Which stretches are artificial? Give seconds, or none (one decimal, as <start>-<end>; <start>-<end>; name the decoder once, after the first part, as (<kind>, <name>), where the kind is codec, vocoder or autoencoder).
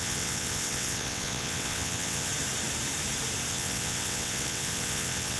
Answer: 0.0-2.3 (vocoder, WaveNeXt); 3.5-5.4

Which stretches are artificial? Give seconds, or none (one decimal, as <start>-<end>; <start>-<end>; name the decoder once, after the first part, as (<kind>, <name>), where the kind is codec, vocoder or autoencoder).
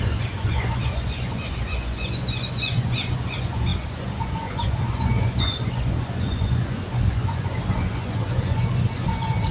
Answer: 0.0-9.5 (vocoder, Vocos)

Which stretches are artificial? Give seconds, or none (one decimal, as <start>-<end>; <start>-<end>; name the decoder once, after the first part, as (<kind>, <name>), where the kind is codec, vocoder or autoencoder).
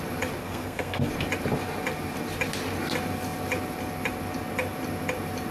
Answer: 0.4-1.1 (codec, SNAC)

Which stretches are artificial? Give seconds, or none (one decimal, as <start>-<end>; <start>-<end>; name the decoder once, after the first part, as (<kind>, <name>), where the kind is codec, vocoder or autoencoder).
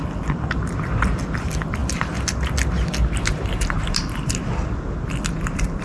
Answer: 0.0-1.8 (vocoder, BigVGAN v2); 5.3-5.8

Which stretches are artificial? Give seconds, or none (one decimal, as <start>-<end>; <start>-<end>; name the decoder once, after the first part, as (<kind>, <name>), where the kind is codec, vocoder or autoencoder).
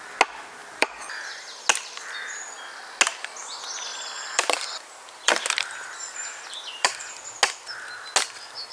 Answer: 0.6-1.3 (vocoder, BigVGAN v2); 3.9-7.1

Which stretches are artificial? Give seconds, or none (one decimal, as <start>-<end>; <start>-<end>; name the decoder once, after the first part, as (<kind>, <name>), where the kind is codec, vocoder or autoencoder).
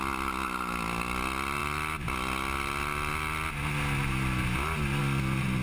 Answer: none